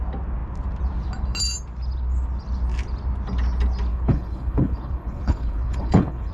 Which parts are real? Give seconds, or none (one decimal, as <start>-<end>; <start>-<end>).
0.0-3.9

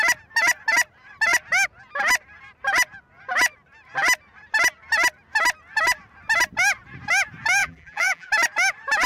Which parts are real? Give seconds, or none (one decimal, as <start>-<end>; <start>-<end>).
0.0-7.6; 8.3-9.1